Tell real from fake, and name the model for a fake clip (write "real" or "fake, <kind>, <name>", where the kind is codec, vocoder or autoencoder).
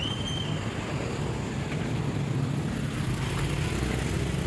real